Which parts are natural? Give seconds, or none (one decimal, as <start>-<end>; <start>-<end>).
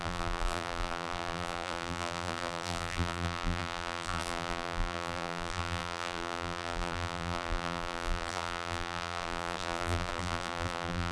none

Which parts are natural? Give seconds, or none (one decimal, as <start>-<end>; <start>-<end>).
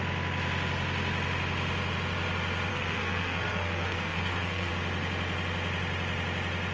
0.0-2.7; 4.7-6.7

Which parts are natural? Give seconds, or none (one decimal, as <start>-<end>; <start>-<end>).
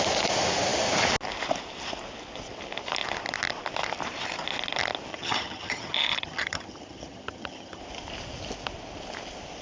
0.0-5.1; 7.8-9.6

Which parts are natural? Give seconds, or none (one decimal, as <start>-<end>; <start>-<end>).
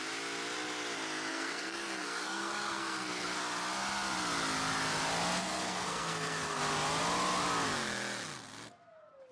0.0-1.3; 3.4-5.4; 6.6-9.3